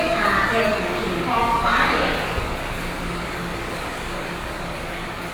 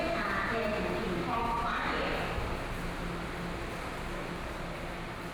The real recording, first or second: second